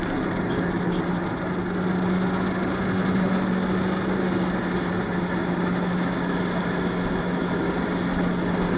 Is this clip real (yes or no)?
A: yes